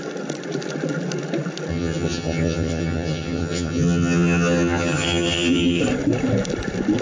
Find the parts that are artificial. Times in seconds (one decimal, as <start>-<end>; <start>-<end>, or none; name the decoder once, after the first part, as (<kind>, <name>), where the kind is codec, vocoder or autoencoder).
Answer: 1.7-5.8 (vocoder, HiFi-GAN)